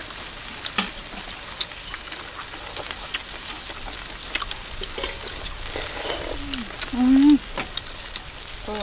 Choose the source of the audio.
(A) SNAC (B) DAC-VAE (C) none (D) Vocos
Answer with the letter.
C